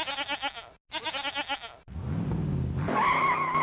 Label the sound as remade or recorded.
recorded